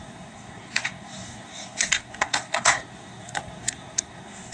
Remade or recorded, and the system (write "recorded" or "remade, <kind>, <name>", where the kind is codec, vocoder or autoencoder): remade, codec, SNAC